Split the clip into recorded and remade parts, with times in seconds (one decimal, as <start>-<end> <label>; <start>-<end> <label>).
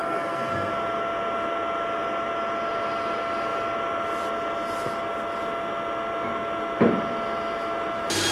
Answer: 0.0-0.7 remade; 0.7-8.3 recorded